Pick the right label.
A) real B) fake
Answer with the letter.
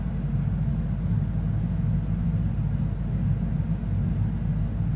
A